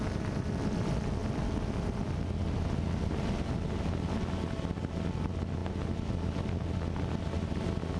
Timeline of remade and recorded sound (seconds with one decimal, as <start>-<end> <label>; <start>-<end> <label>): 0.0-8.0 recorded